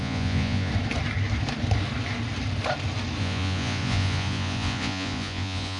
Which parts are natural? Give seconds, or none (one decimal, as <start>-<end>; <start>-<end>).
0.7-3.2